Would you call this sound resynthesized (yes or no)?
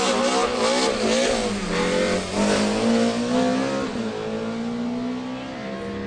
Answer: no